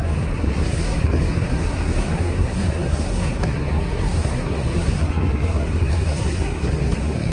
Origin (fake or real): fake